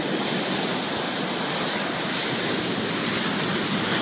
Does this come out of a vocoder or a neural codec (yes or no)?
no